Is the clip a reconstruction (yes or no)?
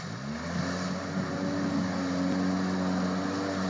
no